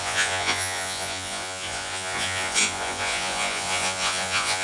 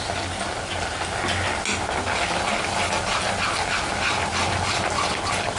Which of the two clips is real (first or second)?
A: second